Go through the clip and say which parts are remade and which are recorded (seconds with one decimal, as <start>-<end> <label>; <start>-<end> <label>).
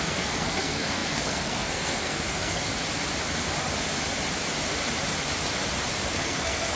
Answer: 0.0-2.7 remade; 2.7-6.1 recorded; 6.1-6.8 remade